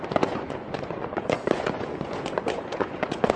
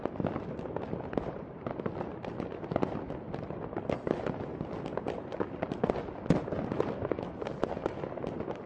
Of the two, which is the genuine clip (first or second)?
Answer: second